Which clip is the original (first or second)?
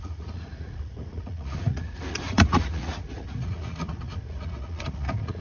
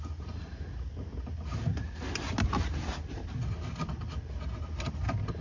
second